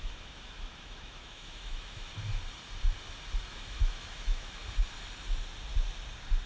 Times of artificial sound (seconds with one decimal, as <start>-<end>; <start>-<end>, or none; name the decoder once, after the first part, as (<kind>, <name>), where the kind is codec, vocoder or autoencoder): 0.0-2.1 (autoencoder, DAC-VAE); 3.5-4.6